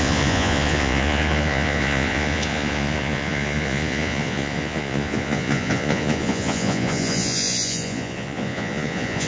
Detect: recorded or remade remade